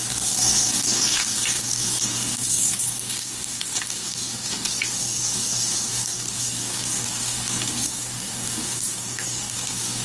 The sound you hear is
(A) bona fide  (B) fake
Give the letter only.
B